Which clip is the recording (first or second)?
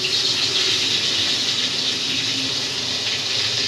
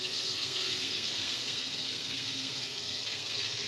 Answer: first